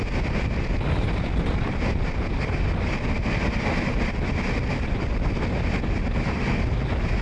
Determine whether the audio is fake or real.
real